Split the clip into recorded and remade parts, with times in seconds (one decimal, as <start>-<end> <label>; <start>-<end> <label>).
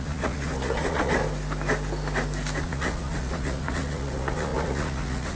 0.0-1.2 remade; 1.2-2.6 recorded; 2.6-5.3 remade